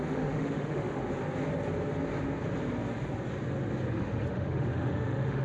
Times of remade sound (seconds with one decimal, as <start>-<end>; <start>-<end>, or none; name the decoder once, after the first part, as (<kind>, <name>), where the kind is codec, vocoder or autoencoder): 0.0-1.0 (autoencoder, DAC-VAE); 3.9-5.4